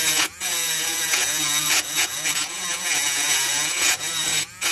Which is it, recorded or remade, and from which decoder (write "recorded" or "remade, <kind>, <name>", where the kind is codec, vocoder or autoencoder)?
remade, vocoder, Vocos